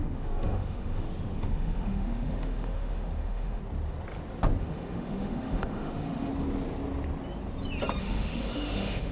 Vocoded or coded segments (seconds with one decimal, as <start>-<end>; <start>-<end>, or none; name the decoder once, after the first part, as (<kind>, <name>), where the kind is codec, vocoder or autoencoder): 0.0-3.6 (autoencoder, DAC-VAE); 4.6-6.3; 8.0-9.1